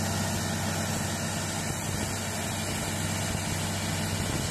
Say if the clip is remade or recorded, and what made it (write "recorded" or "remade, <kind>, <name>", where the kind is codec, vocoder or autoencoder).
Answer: recorded